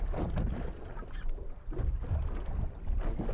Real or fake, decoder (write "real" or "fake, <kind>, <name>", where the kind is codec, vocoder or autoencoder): real